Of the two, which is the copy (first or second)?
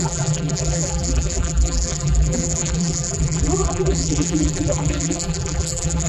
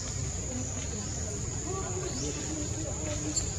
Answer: first